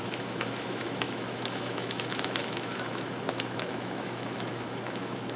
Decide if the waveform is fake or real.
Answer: fake